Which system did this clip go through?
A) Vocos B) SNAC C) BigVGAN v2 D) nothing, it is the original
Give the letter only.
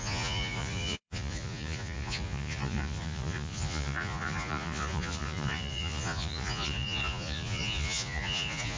A